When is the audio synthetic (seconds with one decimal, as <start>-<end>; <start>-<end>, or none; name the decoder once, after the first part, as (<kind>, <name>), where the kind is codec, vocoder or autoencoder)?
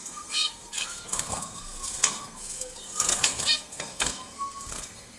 0.0-5.2 (codec, SNAC)